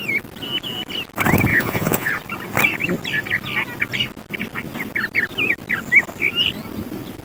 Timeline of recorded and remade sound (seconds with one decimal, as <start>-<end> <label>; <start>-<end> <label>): 0.0-1.5 recorded; 1.5-2.1 remade; 2.1-7.2 recorded